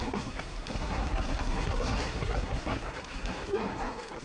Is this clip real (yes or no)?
no